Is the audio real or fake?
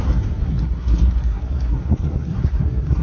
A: fake